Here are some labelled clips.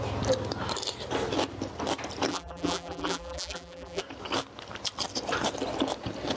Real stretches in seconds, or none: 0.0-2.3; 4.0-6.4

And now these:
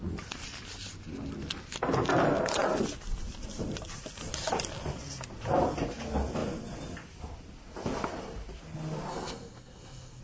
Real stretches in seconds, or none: 0.0-9.1

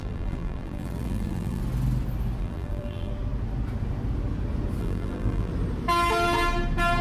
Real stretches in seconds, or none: 1.6-2.4; 3.1-4.8; 5.5-7.0

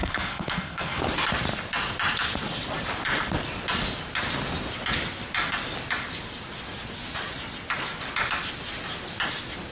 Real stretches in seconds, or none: 1.0-9.7

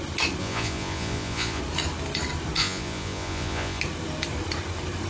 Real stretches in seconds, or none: 0.0-0.4; 1.6-2.6; 3.8-5.1

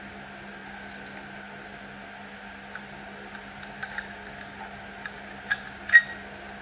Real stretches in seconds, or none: 0.0-6.6

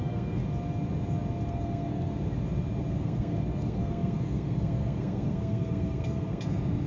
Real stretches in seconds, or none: 0.4-1.5; 2.1-2.9

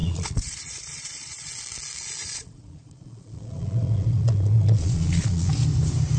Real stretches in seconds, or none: 1.5-2.2; 5.5-6.2